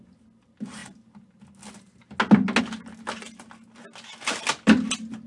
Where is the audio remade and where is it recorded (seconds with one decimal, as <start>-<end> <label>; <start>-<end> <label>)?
0.0-5.3 recorded